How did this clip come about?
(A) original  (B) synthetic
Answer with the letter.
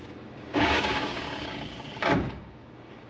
B